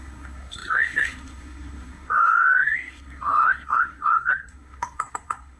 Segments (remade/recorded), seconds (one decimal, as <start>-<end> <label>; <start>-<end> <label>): 0.0-5.6 remade